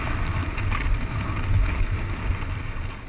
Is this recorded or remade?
recorded